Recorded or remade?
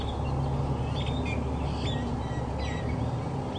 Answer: recorded